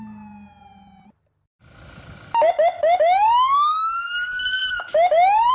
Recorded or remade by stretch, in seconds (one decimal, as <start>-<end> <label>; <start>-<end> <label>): 0.0-5.5 recorded